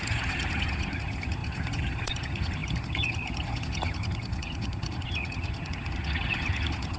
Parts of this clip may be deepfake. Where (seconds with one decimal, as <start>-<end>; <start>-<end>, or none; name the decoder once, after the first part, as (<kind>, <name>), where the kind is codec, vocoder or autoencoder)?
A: 0.0-7.0 (vocoder, HiFi-GAN)